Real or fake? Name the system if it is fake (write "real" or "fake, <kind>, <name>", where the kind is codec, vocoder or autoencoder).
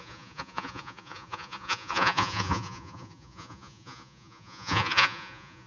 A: fake, vocoder, Vocos